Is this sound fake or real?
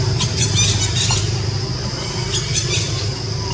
real